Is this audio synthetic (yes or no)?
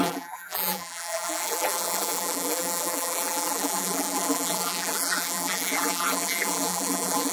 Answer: yes